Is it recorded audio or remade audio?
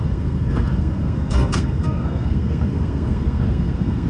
remade